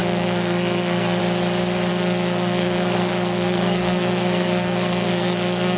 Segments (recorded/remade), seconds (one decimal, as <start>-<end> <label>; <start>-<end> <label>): 0.0-1.2 remade; 1.2-1.9 recorded; 1.9-5.8 remade